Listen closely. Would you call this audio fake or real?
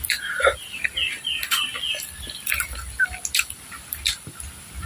real